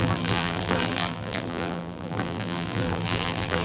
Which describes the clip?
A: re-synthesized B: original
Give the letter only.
A